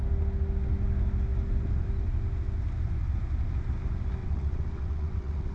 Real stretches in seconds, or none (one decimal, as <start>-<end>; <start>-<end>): 0.0-4.2